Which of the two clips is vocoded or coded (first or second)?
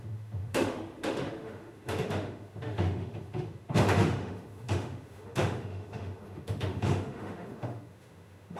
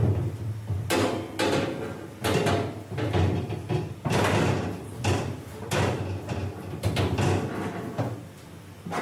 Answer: first